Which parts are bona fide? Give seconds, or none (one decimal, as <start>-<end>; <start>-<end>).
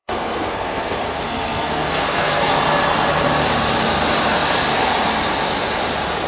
2.5-6.3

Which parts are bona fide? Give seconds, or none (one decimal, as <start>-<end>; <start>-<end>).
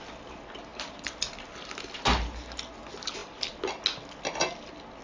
0.0-5.0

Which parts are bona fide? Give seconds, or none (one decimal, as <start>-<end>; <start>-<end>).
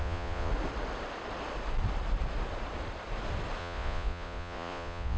0.5-3.6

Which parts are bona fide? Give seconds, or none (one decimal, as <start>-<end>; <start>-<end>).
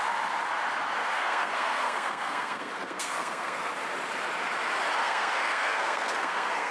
0.0-1.0; 3.7-5.0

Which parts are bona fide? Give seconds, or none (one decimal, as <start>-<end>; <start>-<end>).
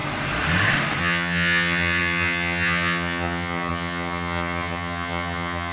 0.0-1.0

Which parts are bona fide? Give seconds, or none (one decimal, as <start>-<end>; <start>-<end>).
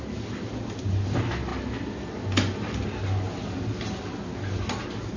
0.0-5.2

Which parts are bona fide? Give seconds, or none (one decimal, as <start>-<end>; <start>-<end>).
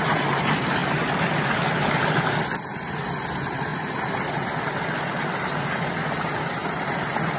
0.0-7.4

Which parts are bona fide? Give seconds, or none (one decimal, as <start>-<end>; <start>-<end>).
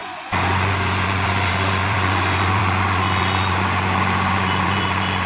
none